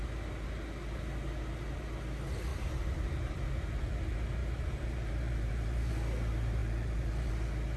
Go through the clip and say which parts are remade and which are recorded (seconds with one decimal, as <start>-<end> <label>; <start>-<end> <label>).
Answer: 0.0-2.5 recorded; 2.5-3.4 remade; 3.4-4.4 recorded; 4.4-5.9 remade; 5.9-6.6 recorded; 6.6-7.3 remade; 7.3-7.8 recorded